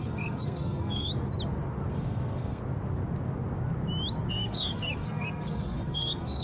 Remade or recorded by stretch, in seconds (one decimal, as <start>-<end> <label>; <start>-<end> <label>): 0.0-1.1 remade; 1.1-1.9 recorded; 1.9-2.6 remade; 2.6-4.3 recorded; 4.3-6.4 remade